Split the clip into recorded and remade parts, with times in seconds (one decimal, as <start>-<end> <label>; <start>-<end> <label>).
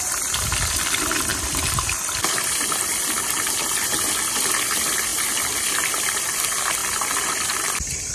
0.0-1.3 remade; 1.3-4.5 recorded; 4.5-6.8 remade; 6.8-7.3 recorded; 7.3-8.1 remade